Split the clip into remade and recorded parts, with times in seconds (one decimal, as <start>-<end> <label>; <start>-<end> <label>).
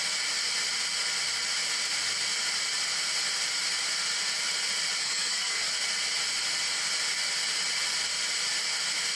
0.0-5.0 recorded; 5.0-5.7 remade; 5.7-9.2 recorded